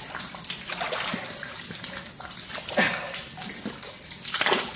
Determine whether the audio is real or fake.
real